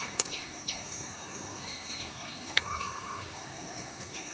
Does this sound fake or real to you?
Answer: fake